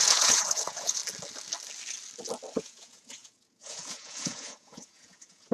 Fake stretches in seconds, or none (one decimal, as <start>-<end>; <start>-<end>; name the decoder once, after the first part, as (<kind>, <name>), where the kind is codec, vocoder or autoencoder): 0.0-1.0 (vocoder, Vocos); 2.6-5.5